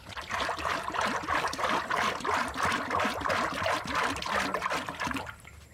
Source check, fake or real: real